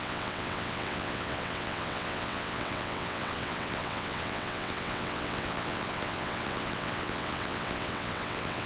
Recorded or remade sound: remade